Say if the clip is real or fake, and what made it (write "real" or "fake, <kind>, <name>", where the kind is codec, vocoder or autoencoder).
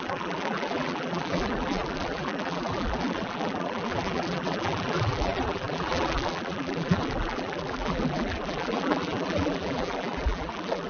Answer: fake, vocoder, BigVGAN v2